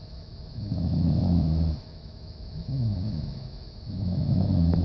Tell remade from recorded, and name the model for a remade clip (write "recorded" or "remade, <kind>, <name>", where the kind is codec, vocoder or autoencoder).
remade, autoencoder, DAC-VAE